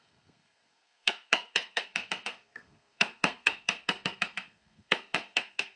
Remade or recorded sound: remade